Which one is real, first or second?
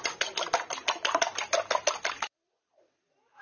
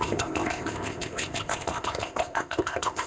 first